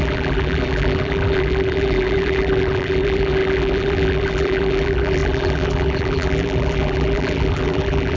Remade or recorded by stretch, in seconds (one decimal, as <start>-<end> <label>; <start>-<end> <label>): 0.0-8.2 remade